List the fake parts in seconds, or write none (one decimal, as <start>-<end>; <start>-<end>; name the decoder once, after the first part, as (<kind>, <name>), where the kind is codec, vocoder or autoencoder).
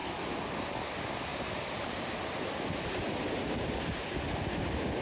1.3-2.2 (vocoder, BigVGAN v2)